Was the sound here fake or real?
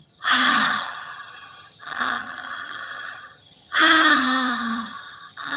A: fake